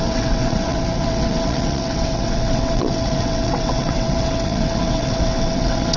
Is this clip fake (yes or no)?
yes